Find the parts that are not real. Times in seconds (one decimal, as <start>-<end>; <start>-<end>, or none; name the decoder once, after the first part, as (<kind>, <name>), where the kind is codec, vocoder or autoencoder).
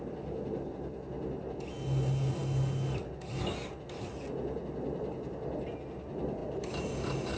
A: none